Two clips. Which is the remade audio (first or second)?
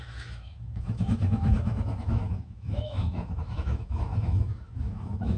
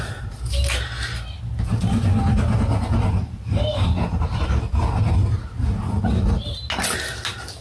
first